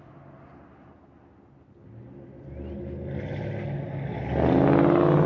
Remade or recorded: recorded